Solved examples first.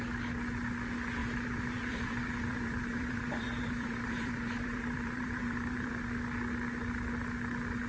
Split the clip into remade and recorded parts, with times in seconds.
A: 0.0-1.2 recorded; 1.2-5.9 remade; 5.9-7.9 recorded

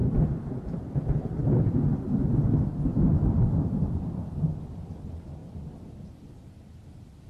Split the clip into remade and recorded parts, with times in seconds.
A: 0.0-0.9 remade; 0.9-3.1 recorded; 3.1-4.4 remade; 4.4-5.4 recorded; 5.4-6.5 remade; 6.5-7.3 recorded